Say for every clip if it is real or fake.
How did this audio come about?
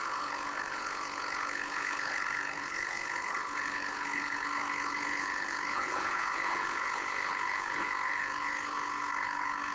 fake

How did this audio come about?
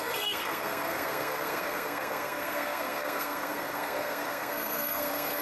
fake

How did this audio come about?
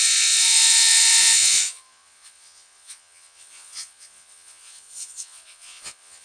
fake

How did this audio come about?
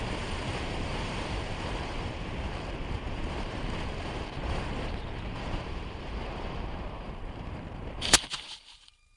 fake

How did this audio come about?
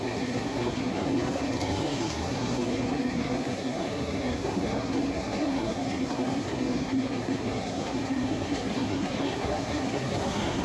fake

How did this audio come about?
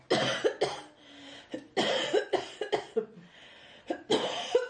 real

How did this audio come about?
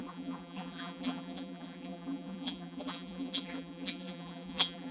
fake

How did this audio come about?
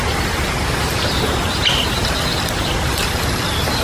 real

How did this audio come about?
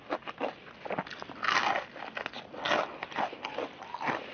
real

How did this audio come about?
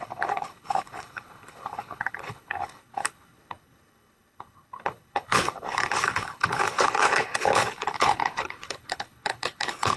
fake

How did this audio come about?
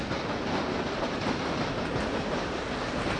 real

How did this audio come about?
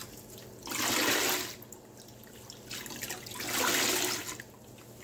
real